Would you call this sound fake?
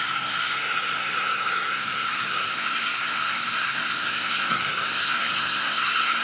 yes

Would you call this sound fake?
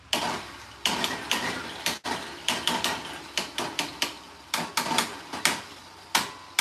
no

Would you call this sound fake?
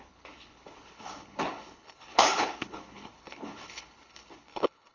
yes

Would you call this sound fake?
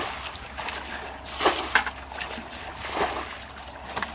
no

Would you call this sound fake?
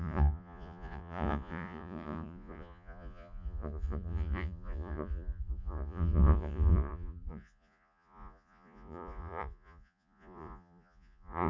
yes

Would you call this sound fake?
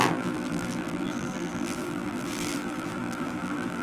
yes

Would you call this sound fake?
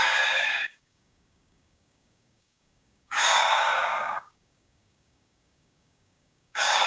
yes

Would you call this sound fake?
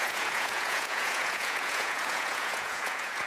yes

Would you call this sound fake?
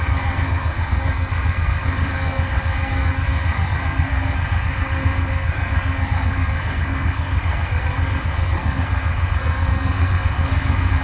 yes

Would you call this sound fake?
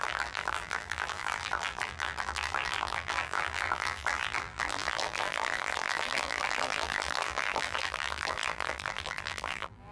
yes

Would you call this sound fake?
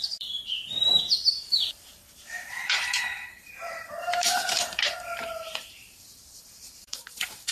yes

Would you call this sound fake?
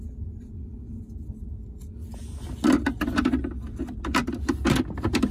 no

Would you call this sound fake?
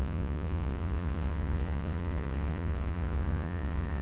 yes